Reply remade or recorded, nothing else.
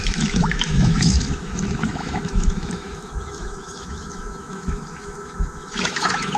remade